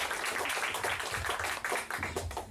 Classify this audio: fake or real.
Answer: real